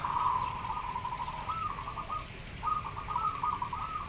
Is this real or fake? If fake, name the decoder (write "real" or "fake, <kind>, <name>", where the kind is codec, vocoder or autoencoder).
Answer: real